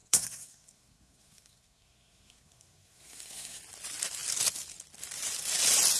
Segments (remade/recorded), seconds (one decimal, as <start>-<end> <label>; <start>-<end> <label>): 0.0-3.6 remade; 3.6-6.0 recorded